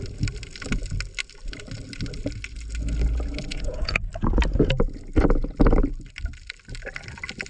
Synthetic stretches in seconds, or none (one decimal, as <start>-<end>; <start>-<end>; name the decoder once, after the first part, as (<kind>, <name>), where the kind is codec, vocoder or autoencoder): 3.5-4.1 (vocoder, Vocos)